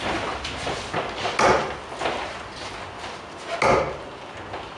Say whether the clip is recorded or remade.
recorded